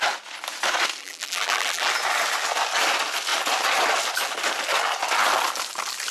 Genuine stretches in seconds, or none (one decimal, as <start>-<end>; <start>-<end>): 0.0-1.0; 1.9-6.1